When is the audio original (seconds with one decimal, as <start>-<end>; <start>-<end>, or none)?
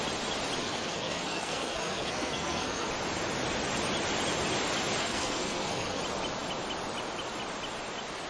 0.0-0.6; 2.9-5.0; 6.0-8.3